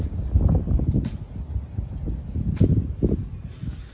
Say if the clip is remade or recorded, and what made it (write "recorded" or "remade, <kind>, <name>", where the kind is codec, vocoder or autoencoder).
recorded